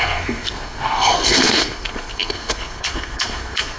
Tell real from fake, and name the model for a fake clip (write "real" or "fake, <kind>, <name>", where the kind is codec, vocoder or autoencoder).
fake, codec, SNAC